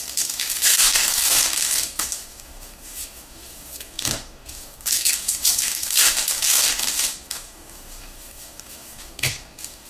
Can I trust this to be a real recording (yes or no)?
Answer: no